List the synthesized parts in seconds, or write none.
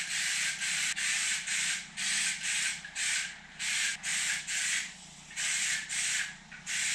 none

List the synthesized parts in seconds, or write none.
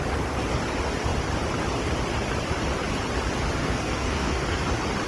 3.6-4.6 (codec, SNAC)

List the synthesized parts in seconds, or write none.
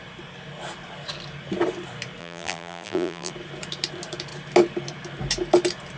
2.2-3.3 (vocoder, BigVGAN v2)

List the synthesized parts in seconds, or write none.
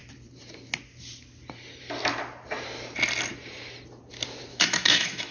4.5-5.3 (autoencoder, DAC-VAE)